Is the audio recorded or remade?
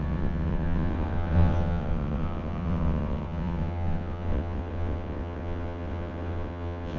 remade